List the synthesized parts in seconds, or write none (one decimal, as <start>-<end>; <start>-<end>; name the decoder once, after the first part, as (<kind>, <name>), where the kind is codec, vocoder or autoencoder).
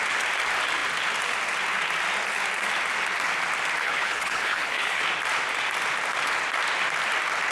3.8-5.0 (codec, HILCodec)